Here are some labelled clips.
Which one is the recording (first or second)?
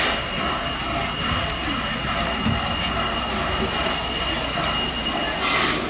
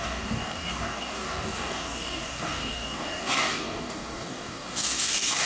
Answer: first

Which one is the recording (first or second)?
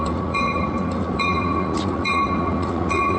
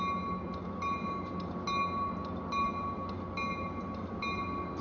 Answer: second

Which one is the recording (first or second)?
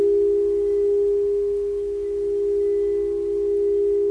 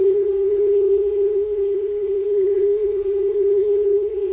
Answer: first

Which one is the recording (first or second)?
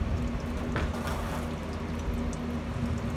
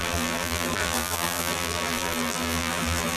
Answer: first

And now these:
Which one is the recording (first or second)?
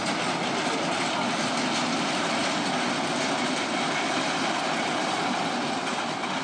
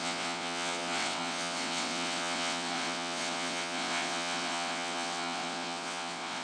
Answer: first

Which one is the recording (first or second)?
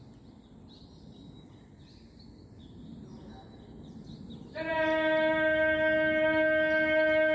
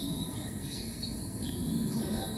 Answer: first